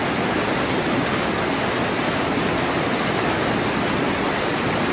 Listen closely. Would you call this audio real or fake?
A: real